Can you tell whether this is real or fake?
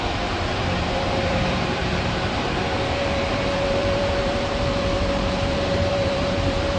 fake